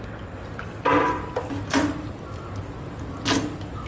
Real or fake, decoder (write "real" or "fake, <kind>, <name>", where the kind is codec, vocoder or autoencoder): real